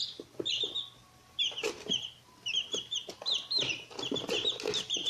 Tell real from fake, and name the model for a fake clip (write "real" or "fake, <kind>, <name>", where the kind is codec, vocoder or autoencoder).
real